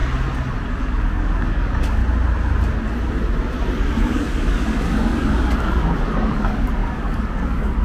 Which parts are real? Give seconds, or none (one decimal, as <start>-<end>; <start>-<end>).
0.0-0.8; 2.0-3.7